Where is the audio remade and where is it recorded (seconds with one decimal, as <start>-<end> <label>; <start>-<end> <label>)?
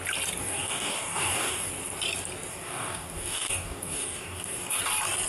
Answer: 0.0-0.4 recorded; 0.4-1.7 remade; 1.7-2.5 recorded; 2.5-4.8 remade; 4.8-5.3 recorded